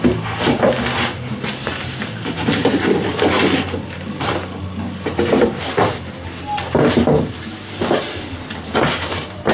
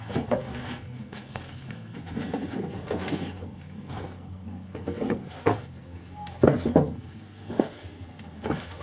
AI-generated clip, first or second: second